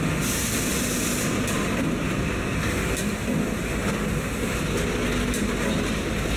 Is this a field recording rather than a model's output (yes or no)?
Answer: yes